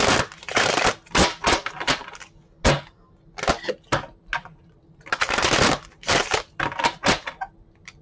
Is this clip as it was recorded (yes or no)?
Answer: yes